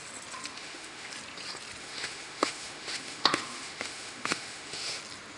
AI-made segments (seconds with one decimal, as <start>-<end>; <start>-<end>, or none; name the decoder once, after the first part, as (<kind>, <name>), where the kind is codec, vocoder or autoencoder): 0.5-1.1 (autoencoder, DAC-VAE); 1.8-5.0